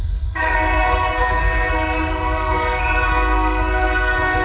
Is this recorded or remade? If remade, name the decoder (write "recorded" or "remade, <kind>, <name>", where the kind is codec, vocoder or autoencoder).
remade, codec, SNAC